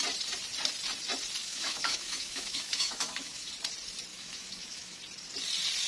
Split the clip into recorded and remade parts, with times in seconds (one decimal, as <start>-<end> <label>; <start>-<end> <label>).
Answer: 0.0-1.4 recorded; 1.4-3.5 remade; 3.5-4.1 recorded; 4.1-5.0 remade; 5.0-5.9 recorded